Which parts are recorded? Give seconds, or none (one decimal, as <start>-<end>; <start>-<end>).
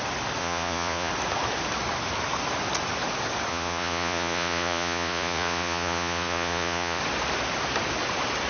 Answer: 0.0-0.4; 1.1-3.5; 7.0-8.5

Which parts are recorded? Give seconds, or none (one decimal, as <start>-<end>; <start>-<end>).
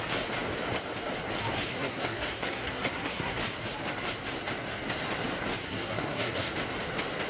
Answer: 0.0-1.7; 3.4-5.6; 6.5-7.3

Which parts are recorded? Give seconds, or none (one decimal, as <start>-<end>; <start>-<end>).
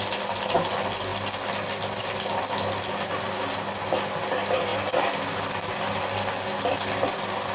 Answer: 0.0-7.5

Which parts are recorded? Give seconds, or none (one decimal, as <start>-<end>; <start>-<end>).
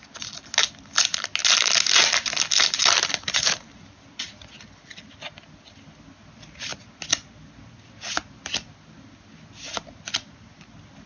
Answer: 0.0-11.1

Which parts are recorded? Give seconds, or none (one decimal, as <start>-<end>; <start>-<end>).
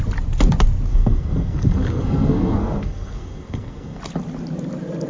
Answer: 0.0-0.9; 4.0-5.1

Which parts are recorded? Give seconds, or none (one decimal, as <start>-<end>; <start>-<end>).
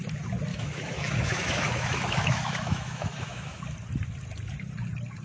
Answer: 0.0-0.5; 3.6-5.2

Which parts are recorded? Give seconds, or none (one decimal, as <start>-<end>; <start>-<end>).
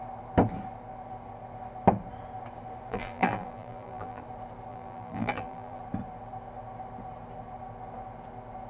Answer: 0.0-2.9; 4.2-4.7; 5.8-8.7